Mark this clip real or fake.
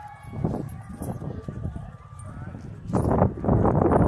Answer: real